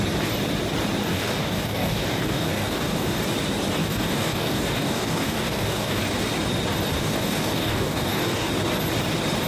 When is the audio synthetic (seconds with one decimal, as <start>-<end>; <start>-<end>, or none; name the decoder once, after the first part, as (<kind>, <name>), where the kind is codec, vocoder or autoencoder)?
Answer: 1.1-3.2 (codec, DAC); 3.8-6.0; 6.9-8.5